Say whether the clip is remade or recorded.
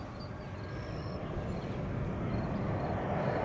recorded